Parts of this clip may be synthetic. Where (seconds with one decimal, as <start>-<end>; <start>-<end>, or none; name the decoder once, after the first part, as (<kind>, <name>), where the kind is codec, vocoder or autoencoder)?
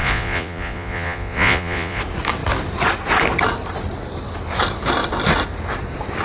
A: 0.0-2.0 (vocoder, Vocos)